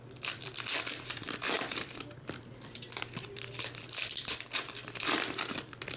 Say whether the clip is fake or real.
fake